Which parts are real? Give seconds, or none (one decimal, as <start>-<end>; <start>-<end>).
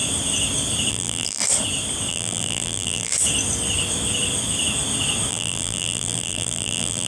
0.0-0.9; 1.4-2.1; 3.1-5.3